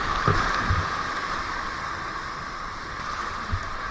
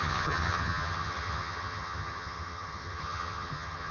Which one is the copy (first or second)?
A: second